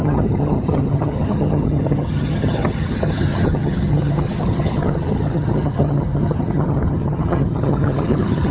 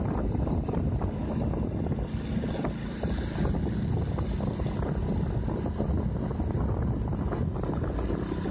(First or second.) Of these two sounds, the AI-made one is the first